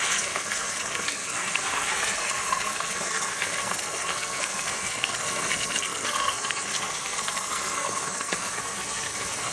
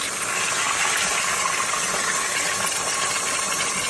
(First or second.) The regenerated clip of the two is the first